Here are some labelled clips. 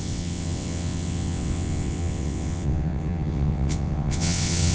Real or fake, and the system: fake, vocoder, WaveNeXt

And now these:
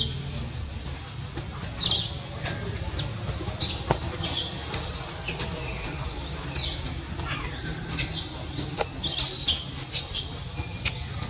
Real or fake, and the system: real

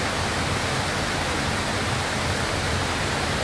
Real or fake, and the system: real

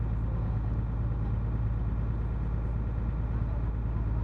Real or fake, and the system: real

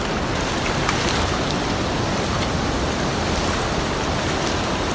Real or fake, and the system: real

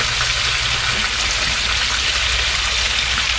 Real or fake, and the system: real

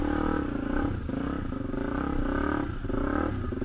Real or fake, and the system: real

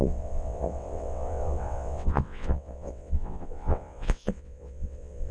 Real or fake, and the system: fake, vocoder, WaveNeXt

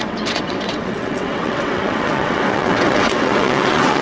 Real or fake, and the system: fake, vocoder, WaveNeXt